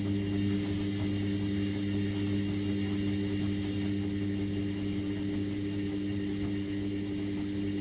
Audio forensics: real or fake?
real